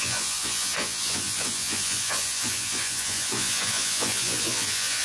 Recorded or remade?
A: remade